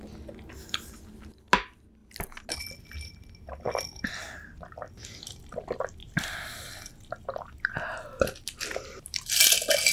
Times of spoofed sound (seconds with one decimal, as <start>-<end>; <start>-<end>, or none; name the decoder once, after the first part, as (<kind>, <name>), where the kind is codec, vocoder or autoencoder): 6.0-6.9 (vocoder, BigVGAN v2)